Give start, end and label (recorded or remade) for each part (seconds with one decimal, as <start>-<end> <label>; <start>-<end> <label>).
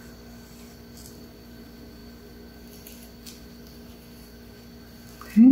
0.0-5.5 recorded